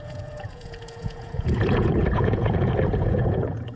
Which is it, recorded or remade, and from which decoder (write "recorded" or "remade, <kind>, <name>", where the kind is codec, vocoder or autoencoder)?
remade, vocoder, Vocos